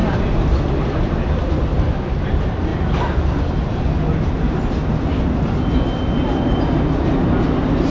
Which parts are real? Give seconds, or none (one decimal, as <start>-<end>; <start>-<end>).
0.0-7.9

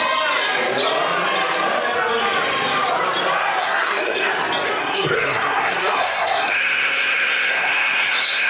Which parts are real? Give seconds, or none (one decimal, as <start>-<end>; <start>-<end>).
0.0-3.6; 4.3-4.8

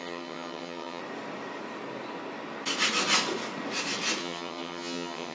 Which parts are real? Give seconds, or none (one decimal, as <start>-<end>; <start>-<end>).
1.0-4.2

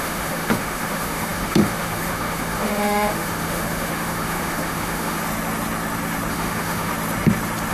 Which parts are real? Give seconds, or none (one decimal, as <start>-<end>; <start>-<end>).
5.2-6.3; 6.9-7.7

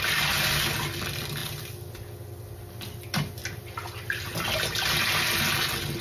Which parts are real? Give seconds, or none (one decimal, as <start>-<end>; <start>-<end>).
0.0-6.0

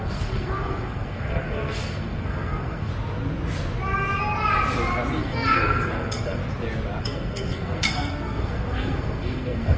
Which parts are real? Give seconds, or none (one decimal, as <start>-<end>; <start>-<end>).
2.9-5.2; 6.4-7.0